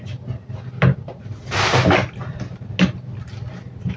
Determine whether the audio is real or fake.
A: real